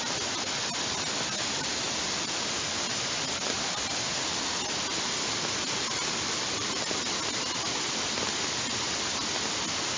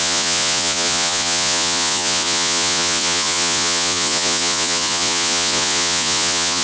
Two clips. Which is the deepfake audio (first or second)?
second